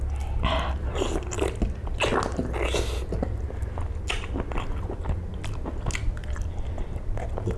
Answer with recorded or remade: recorded